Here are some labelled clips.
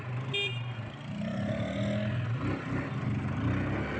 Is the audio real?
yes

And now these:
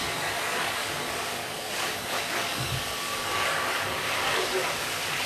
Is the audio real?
no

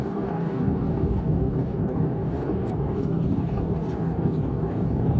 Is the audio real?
no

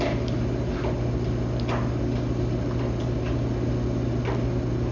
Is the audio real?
yes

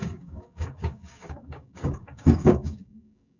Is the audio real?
no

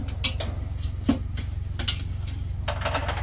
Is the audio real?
yes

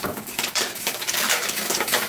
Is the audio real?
no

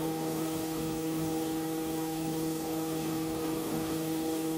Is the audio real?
no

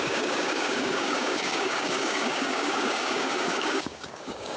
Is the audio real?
no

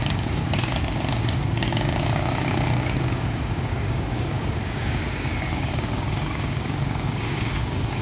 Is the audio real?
no